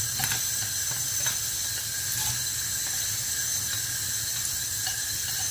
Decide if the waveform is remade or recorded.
recorded